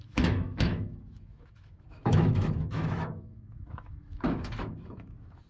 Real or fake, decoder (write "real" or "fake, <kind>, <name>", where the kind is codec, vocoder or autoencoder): fake, autoencoder, DAC-VAE